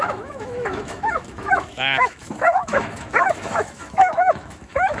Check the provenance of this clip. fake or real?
fake